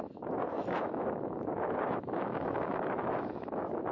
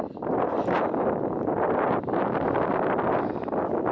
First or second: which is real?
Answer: second